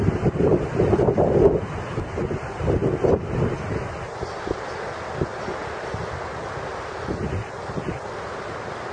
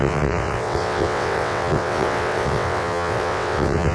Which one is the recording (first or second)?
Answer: first